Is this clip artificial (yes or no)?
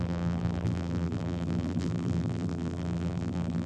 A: yes